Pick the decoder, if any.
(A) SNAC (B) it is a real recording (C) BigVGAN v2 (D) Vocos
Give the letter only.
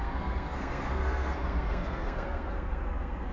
A